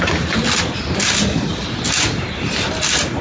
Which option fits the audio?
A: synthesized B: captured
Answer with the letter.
B